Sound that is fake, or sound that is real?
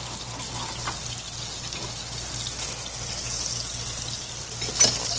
real